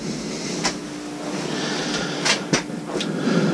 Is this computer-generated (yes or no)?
no